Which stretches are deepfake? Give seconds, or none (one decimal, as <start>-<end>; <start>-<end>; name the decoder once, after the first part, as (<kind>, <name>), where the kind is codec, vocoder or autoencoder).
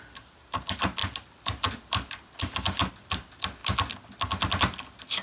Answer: none